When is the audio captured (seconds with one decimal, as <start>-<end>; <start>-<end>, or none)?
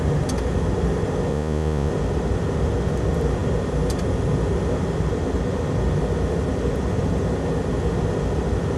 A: 0.0-1.3; 1.9-8.8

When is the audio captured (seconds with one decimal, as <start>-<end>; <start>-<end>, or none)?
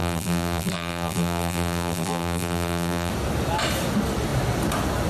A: 3.1-5.1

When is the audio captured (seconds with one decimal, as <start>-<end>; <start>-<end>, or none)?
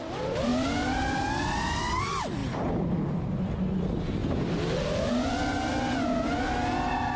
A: 0.0-2.4; 3.7-4.2; 5.1-7.2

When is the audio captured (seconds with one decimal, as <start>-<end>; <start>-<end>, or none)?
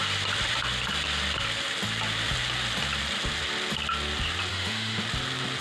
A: 0.0-4.5; 5.0-5.6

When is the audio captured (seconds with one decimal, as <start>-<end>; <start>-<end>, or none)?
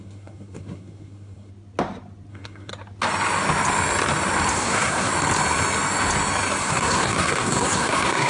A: 1.5-2.3; 2.7-4.5; 5.1-6.6